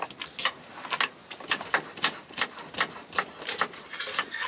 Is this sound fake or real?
real